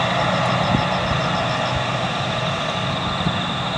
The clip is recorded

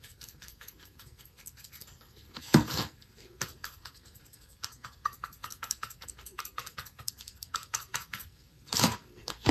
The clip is remade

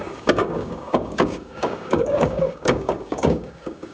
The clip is remade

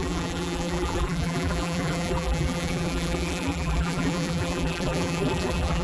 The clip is remade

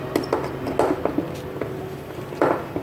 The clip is recorded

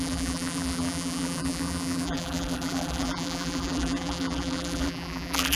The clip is remade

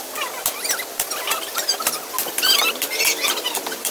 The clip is recorded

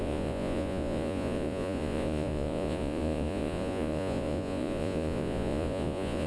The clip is remade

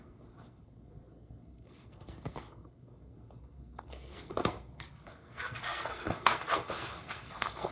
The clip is remade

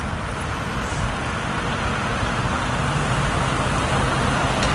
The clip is recorded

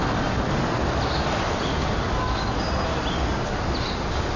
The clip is recorded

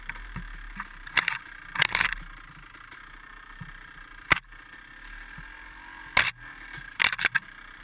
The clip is recorded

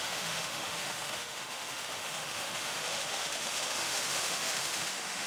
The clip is remade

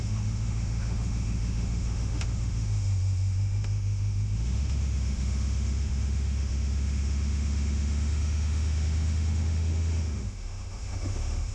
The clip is remade